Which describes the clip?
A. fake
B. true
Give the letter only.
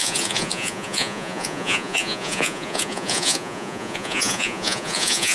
A